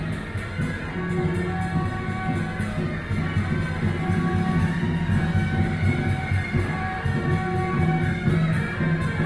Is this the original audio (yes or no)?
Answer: yes